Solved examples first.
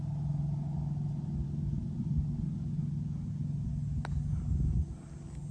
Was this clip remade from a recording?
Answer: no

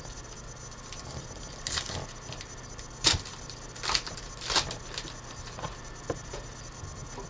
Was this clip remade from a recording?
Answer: no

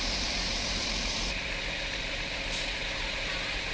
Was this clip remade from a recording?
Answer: yes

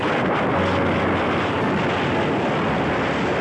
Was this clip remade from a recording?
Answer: no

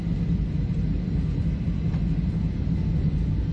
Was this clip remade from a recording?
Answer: no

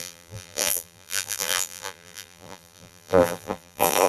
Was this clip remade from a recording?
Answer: yes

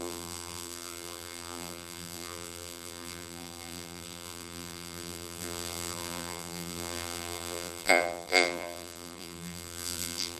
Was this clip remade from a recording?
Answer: yes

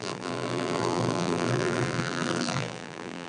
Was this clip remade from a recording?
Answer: yes